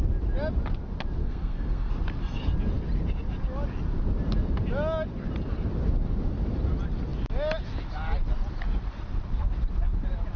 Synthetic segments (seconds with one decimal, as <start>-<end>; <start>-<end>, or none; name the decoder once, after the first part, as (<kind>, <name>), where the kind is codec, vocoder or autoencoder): 1.2-1.9 (codec, SNAC)